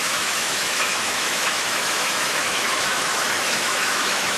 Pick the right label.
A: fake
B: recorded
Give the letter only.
A